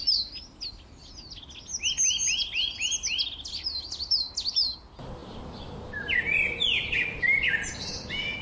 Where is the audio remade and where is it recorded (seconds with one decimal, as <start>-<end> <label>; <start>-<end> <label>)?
0.0-8.4 recorded